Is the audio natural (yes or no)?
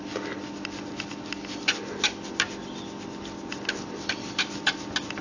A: yes